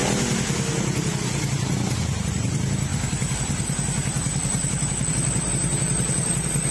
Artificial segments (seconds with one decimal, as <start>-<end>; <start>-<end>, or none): 2.3-2.9; 5.1-6.7